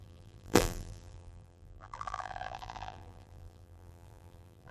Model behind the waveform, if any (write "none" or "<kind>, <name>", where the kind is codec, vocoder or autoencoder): vocoder, BigVGAN v2